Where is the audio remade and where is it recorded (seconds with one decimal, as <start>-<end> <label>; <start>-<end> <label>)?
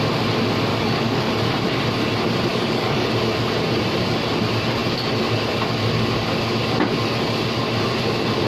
0.0-0.7 recorded; 0.7-1.3 remade; 1.3-2.5 recorded; 2.5-3.1 remade; 3.1-8.5 recorded